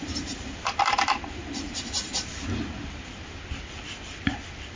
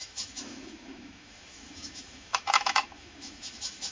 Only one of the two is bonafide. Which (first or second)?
first